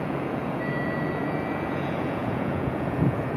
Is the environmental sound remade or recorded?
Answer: remade